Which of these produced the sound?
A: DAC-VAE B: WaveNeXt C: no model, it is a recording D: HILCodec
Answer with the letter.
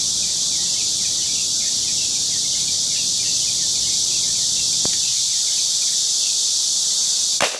C